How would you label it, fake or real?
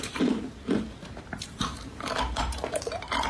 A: fake